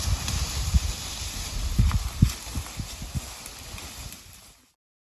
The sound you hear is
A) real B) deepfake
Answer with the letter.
A